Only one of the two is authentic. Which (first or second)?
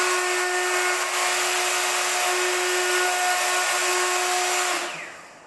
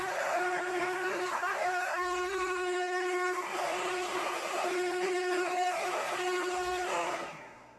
first